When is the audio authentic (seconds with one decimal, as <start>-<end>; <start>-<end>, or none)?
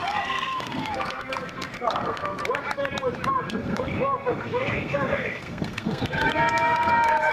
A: 2.4-3.3